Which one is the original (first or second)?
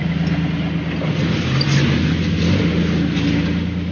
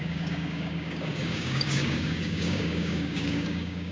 first